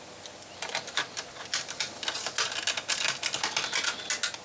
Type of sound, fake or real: real